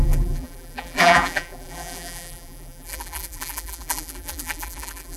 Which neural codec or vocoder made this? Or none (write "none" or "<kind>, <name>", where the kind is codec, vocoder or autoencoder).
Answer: vocoder, BigVGAN v2